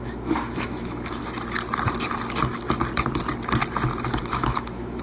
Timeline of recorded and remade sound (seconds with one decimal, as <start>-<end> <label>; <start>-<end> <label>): 0.0-1.2 remade; 1.2-4.2 recorded; 4.2-5.0 remade